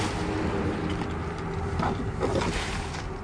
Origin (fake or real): real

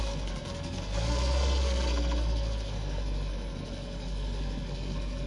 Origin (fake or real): fake